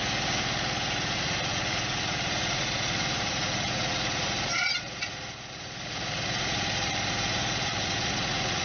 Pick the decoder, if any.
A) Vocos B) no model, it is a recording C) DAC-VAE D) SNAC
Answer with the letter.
A